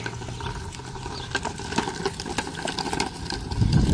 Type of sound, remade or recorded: recorded